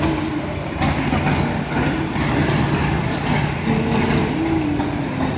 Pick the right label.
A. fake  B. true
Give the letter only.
B